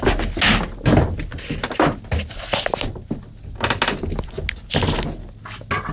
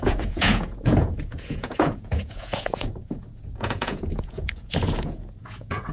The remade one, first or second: second